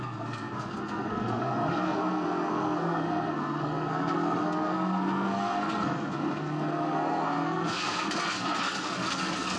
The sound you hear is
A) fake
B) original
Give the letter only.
A